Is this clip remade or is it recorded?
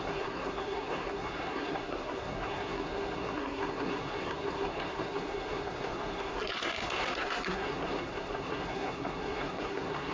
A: remade